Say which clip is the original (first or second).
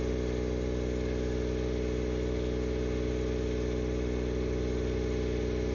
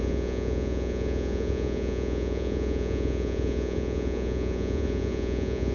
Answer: first